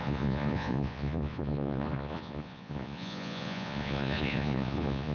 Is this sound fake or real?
fake